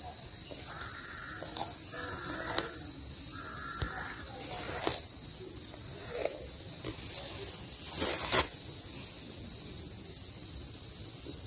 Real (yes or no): yes